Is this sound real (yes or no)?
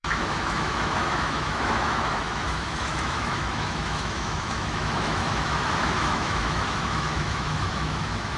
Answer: no